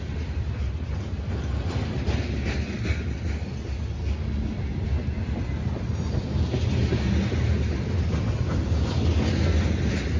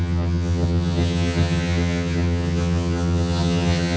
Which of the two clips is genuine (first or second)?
first